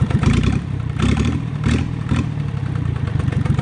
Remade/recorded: remade